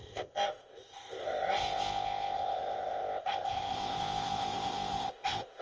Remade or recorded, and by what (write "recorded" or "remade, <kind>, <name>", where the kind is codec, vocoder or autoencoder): remade, codec, ZipCodec